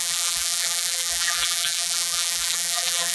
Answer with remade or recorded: remade